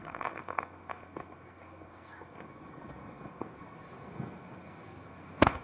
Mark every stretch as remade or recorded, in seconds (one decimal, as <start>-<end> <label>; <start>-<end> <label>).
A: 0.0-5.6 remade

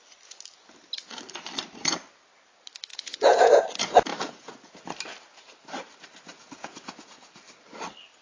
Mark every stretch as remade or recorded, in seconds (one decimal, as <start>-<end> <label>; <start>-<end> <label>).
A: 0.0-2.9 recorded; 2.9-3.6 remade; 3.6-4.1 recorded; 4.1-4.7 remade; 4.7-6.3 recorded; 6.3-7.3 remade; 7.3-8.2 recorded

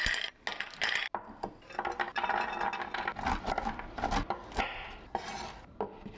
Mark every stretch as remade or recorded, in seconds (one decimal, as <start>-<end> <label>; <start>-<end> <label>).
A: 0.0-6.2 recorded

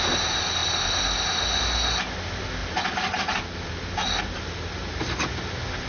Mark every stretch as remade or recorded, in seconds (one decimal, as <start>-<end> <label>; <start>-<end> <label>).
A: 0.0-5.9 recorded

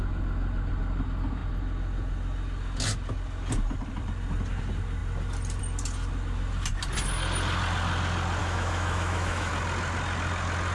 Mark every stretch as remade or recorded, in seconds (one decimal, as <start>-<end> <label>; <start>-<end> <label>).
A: 0.0-8.4 recorded; 8.4-9.5 remade; 9.5-10.7 recorded

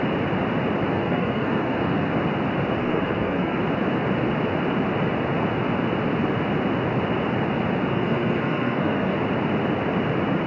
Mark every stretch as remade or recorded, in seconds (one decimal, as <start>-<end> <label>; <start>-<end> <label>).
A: 0.0-0.9 recorded; 0.9-2.1 remade; 2.1-2.8 recorded; 2.8-3.6 remade; 3.6-7.9 recorded; 7.9-9.2 remade; 9.2-10.5 recorded

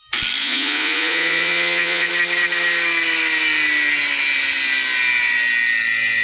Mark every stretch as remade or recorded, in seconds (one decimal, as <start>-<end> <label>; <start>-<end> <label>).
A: 0.0-0.4 recorded; 0.4-2.1 remade; 2.1-6.2 recorded